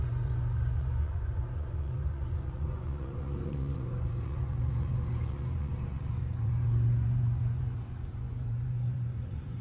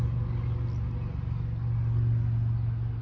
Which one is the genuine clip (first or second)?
second